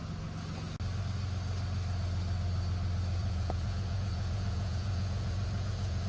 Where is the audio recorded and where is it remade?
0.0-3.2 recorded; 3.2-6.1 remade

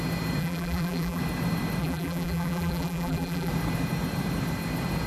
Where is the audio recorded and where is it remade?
0.0-0.4 recorded; 0.4-1.2 remade; 1.2-1.8 recorded; 1.8-3.5 remade; 3.5-5.1 recorded

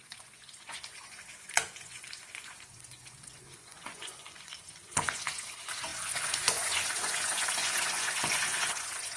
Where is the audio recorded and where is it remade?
0.0-9.2 remade